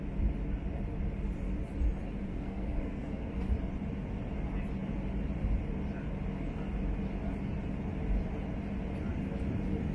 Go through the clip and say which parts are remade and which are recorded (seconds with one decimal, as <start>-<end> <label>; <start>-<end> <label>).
0.0-2.3 recorded; 2.3-3.4 remade; 3.4-9.9 recorded